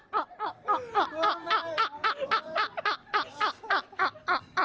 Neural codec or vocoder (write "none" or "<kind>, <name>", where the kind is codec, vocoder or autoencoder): vocoder, BigVGAN v2